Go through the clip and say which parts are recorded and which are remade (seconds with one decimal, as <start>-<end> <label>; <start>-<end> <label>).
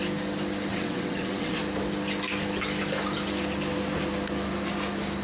0.0-0.7 recorded; 0.7-1.6 remade; 1.6-5.2 recorded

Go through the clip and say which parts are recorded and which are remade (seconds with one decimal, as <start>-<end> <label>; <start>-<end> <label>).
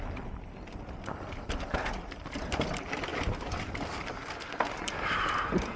0.0-5.8 recorded